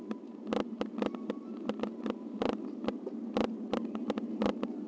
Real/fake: real